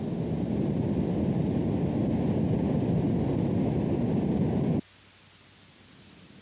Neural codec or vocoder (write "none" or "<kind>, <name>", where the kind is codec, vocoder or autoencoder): none